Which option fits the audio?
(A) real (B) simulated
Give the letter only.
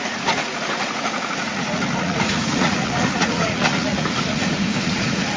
B